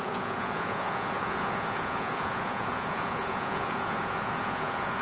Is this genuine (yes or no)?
no